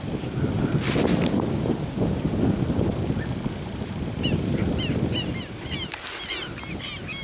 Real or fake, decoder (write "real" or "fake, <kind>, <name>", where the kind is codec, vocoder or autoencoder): real